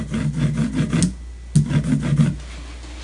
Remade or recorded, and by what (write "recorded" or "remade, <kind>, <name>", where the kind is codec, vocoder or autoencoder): recorded